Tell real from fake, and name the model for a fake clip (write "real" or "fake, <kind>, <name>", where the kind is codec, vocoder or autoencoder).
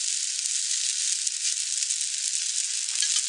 real